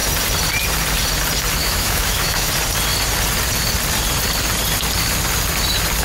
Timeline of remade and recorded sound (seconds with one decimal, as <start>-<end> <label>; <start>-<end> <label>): 0.0-1.6 recorded; 1.6-2.5 remade; 2.5-6.0 recorded